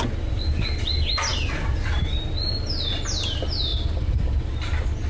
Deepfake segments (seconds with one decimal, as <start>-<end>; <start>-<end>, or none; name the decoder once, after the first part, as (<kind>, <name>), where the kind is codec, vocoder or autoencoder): none